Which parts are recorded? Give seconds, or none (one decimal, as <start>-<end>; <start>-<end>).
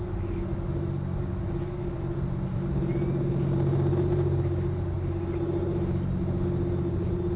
0.0-1.1; 2.0-7.4